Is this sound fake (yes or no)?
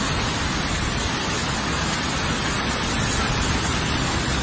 no